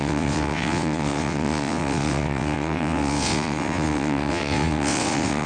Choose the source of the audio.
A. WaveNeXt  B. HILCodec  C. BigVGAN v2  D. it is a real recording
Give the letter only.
A